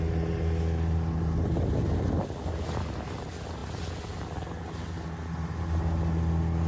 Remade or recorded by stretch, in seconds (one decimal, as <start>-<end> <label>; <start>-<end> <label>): 0.0-6.7 recorded